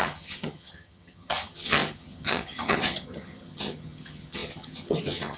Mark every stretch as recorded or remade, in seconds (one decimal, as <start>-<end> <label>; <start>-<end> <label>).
0.0-5.4 remade

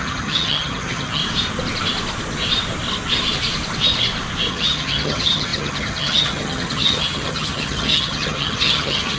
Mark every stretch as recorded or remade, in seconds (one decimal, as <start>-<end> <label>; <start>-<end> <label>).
0.0-1.2 remade; 1.2-4.5 recorded; 4.5-9.2 remade

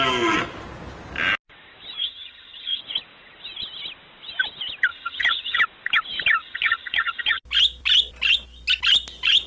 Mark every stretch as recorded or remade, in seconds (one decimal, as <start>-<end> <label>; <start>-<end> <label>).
0.0-2.0 recorded; 2.0-2.8 remade; 2.8-4.9 recorded; 4.9-5.6 remade; 5.6-6.4 recorded; 6.4-7.4 remade; 7.4-9.5 recorded